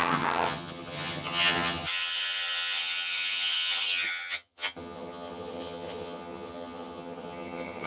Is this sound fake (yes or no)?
yes